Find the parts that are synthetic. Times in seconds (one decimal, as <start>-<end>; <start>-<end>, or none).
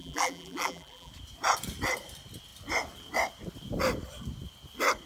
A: 0.0-1.1